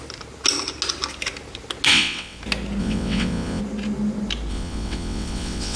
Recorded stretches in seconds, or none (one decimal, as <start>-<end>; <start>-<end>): 0.0-1.9; 2.4-2.8; 3.6-4.5